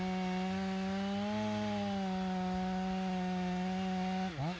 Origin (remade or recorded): recorded